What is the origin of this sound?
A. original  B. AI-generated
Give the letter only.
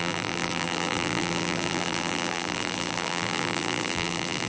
B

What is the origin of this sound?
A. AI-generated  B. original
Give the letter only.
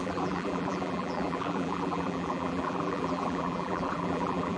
A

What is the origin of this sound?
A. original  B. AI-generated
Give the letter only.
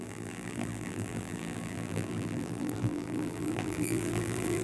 B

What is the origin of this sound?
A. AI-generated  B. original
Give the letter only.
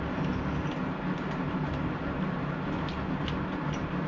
B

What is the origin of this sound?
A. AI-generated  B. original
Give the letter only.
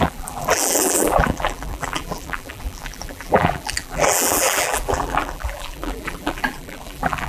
A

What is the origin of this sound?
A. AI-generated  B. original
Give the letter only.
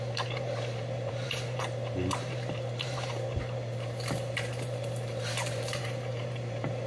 A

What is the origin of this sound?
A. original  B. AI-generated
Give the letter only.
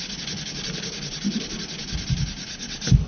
A